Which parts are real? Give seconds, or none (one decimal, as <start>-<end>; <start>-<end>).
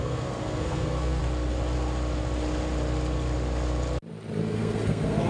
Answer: 1.2-4.4